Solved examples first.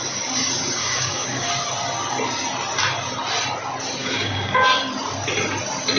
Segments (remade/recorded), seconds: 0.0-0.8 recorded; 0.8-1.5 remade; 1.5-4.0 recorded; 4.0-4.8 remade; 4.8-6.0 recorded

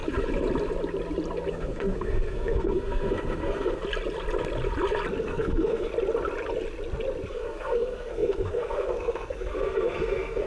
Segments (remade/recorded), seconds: 0.0-1.5 recorded; 1.5-3.8 remade; 3.8-5.2 recorded; 5.2-5.9 remade; 5.9-7.3 recorded; 7.3-10.5 remade

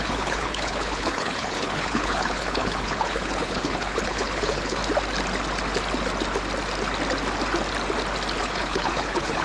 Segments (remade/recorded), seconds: 0.0-4.8 remade; 4.8-8.4 recorded; 8.4-9.4 remade

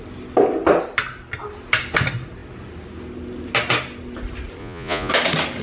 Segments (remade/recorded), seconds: 0.0-4.6 recorded; 4.6-5.1 remade; 5.1-5.6 recorded

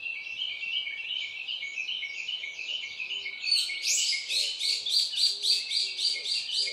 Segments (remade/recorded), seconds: 0.0-6.7 recorded

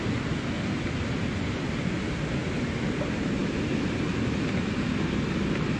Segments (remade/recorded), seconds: 0.0-5.8 recorded

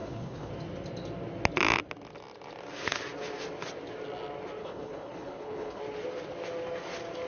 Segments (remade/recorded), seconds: 0.0-0.5 remade; 0.5-4.6 recorded; 4.6-5.8 remade; 5.8-7.3 recorded